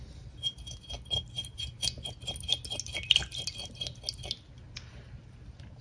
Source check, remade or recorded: recorded